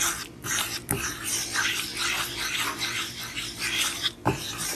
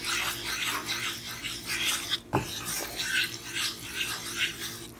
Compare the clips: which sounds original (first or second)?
second